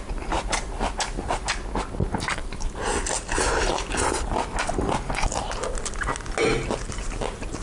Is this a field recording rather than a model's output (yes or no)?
yes